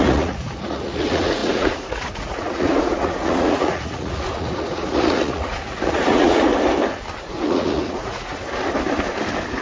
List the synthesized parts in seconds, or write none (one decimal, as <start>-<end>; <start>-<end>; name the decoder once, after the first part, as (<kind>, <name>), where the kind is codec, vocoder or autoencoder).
0.0-6.5 (vocoder, Vocos); 7.2-8.3